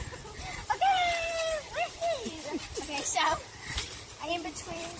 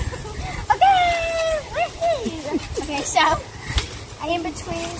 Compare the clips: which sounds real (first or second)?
second